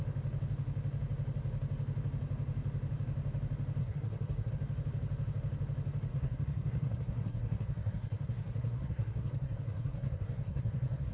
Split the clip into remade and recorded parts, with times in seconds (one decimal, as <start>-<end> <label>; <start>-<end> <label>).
0.0-3.8 recorded; 3.8-4.5 remade; 4.5-6.1 recorded; 6.1-11.1 remade